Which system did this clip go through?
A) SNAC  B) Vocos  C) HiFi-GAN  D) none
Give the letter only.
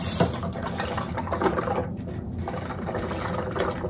D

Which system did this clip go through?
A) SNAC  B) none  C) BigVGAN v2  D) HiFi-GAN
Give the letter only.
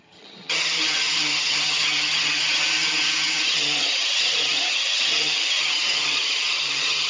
D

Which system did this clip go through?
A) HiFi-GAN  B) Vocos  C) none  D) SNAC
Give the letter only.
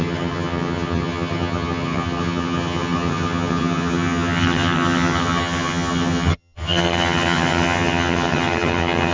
A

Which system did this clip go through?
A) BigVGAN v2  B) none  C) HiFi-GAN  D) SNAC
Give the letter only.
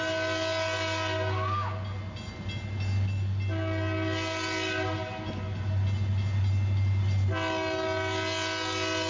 B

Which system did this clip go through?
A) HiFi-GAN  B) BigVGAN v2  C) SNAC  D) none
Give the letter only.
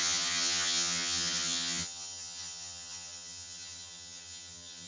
A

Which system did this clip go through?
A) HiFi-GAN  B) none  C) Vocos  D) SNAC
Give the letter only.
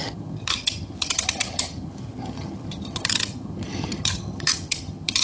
A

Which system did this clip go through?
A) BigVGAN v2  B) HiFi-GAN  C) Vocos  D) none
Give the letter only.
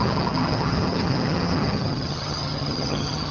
B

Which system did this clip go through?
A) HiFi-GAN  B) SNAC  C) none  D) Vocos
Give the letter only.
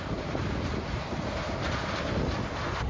C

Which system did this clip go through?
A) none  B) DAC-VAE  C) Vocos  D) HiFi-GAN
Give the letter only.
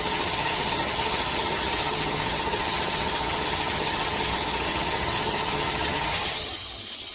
D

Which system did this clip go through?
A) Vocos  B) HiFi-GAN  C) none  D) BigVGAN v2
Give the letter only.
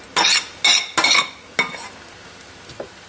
C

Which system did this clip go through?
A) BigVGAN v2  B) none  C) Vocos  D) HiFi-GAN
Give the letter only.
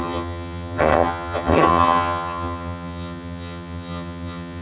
D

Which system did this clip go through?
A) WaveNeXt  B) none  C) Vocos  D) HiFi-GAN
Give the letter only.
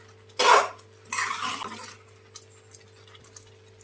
B